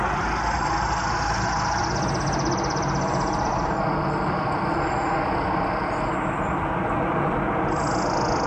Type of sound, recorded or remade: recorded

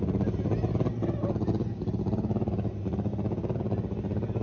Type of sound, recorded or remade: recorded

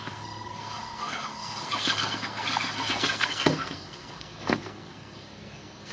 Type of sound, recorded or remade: remade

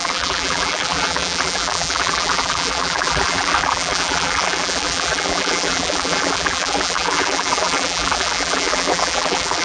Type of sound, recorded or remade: remade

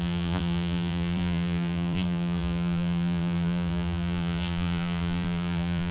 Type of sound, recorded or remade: remade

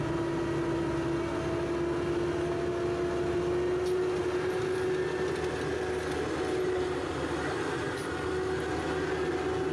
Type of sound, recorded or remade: recorded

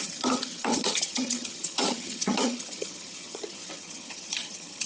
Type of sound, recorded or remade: remade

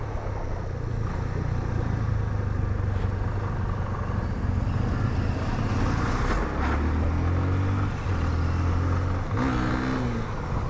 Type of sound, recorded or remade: recorded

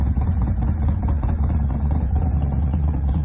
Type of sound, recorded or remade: remade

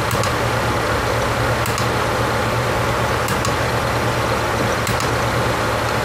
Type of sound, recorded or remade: recorded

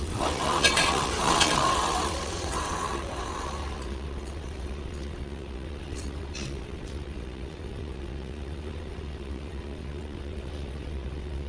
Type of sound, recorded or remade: remade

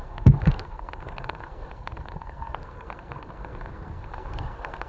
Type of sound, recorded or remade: remade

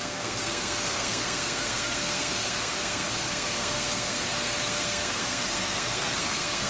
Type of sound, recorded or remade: remade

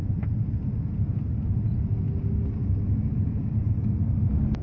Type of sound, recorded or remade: recorded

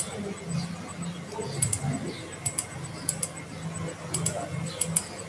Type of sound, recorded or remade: recorded